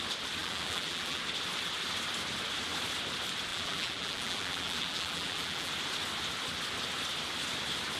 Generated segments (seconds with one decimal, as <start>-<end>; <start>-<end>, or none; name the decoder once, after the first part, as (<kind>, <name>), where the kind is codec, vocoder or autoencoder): 0.4-1.2 (vocoder, BigVGAN v2); 3.5-5.7